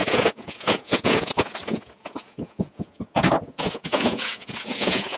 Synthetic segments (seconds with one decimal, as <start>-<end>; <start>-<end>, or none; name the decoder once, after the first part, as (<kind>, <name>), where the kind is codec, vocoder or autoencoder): 0.0-5.2 (vocoder, Vocos)